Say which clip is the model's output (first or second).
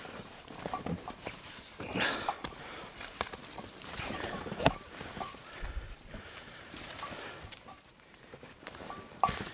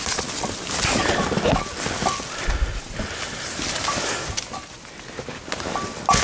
first